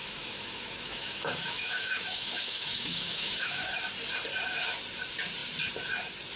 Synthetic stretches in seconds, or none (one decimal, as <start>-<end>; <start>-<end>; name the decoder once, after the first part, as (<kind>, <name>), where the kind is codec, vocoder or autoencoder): 0.0-3.8 (autoencoder, DAC-VAE)